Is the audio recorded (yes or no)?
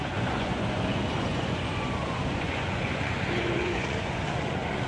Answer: no